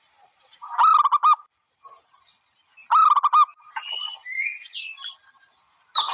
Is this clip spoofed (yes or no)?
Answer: no